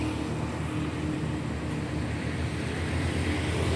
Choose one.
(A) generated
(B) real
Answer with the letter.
B